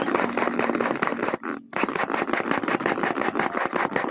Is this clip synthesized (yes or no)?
no